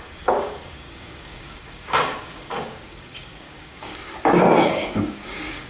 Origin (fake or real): fake